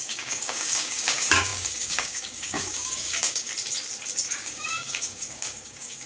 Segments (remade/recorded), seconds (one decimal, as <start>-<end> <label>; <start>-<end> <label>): 0.0-3.5 remade; 3.5-4.4 recorded; 4.4-6.1 remade